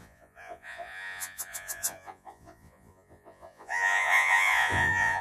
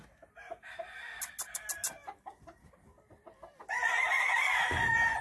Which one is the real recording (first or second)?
second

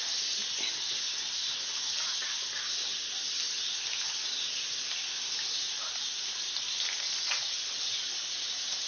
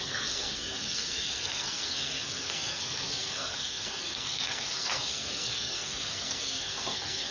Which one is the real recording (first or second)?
first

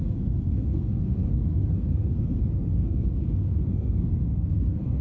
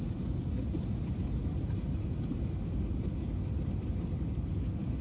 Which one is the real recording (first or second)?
second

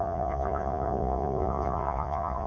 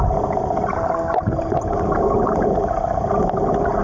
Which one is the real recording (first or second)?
second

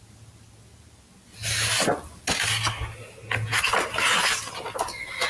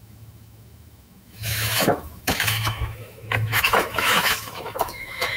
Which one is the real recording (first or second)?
first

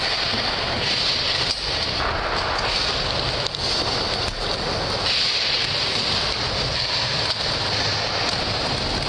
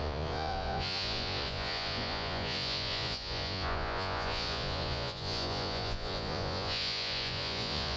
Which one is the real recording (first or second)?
first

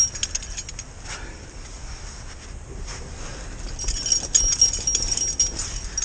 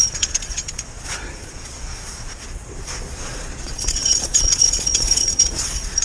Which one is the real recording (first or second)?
first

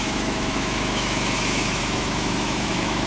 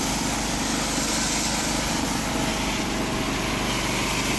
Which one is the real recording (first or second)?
second